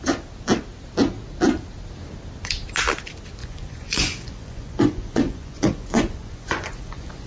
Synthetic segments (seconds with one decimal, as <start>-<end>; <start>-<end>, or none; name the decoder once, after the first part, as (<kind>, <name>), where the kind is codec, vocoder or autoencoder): 3.4-7.3 (vocoder, Vocos)